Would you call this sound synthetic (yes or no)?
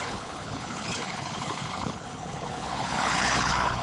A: yes